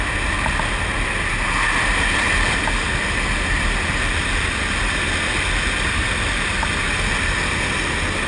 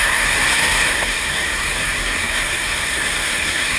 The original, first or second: first